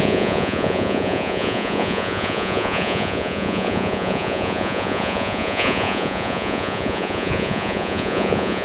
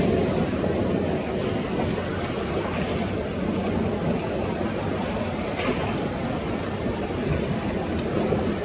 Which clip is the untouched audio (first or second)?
second